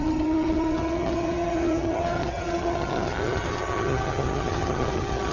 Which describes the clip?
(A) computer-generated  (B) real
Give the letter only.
A